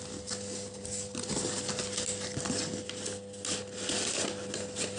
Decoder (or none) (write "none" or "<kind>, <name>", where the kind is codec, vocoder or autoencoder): none